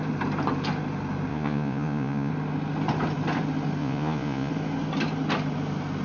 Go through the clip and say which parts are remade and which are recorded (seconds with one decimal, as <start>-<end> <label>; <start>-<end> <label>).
0.0-1.3 recorded; 1.3-2.3 remade; 2.3-3.8 recorded; 3.8-4.5 remade; 4.5-6.0 recorded